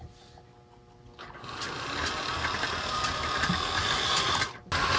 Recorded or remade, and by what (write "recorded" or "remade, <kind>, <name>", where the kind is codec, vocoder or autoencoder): recorded